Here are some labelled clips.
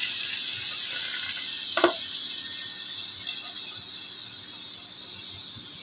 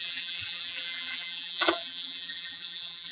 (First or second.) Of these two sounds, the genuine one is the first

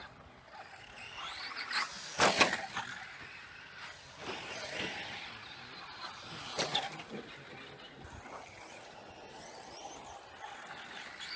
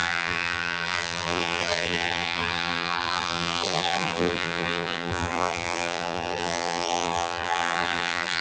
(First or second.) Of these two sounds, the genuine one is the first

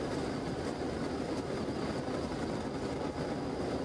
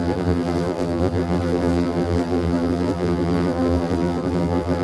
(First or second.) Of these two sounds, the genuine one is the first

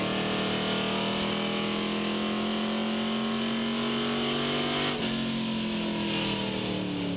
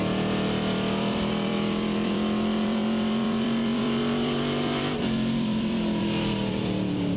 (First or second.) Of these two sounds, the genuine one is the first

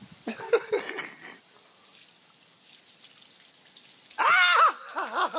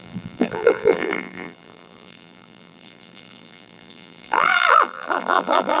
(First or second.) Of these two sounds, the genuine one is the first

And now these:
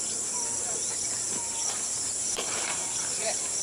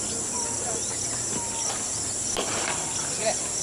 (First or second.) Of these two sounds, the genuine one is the second